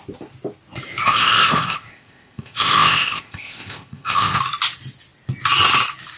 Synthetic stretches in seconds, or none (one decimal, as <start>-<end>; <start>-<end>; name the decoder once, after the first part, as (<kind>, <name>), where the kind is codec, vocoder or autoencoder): 1.0-4.4 (codec, ZipCodec)